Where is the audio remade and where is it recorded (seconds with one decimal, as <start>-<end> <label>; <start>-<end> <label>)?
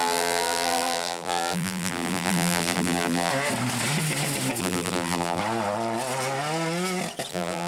0.0-3.3 remade; 3.3-4.6 recorded; 4.6-5.4 remade; 5.4-7.3 recorded; 7.3-7.7 remade